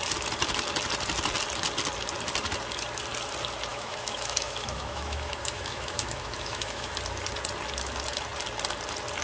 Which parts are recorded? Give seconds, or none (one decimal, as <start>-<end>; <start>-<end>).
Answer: 0.0-3.7; 6.9-9.2